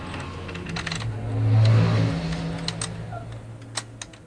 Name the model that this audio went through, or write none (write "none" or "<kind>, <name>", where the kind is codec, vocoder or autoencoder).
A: none